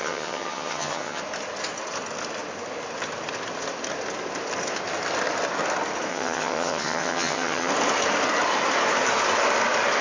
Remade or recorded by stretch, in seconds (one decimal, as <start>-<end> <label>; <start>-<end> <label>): 0.0-1.2 remade; 1.2-6.1 recorded; 6.1-7.7 remade; 7.7-10.0 recorded